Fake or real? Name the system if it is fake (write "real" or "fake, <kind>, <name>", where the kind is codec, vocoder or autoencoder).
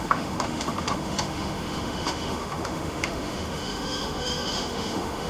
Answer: fake, autoencoder, DAC-VAE